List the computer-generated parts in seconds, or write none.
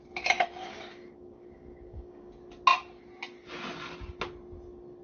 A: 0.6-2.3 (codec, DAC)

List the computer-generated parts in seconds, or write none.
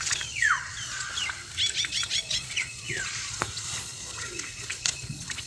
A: 0.0-1.1 (vocoder, Vocos); 1.8-5.5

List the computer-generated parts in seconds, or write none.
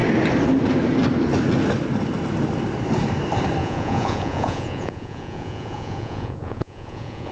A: 3.6-7.3 (vocoder, Vocos)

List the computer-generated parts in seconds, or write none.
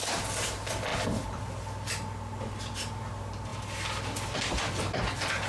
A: none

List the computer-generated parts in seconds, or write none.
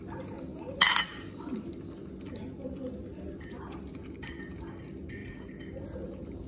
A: none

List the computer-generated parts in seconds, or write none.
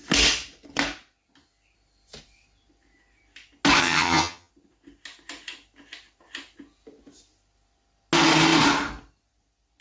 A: 3.8-4.5 (vocoder, HiFi-GAN)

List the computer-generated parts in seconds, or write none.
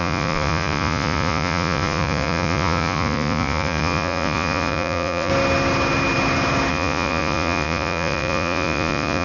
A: 0.0-5.3 (vocoder, Vocos); 6.7-9.2